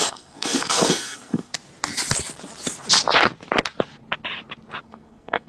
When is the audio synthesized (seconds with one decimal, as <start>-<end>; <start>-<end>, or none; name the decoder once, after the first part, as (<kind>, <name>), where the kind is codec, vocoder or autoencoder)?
0.0-1.5 (codec, SNAC); 4.8-5.5